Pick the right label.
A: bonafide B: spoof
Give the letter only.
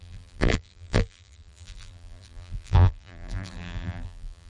B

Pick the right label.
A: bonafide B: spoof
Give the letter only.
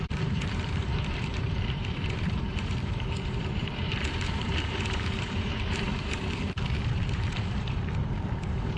B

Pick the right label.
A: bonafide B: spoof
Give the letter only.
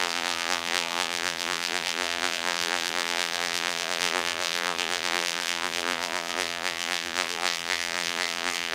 B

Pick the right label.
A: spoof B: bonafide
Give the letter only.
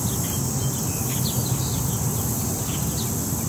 B